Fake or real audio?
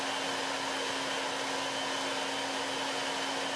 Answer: real